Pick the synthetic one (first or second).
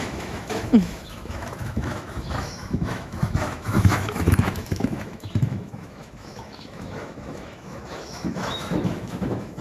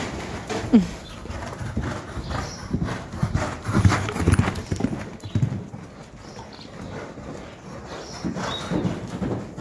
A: first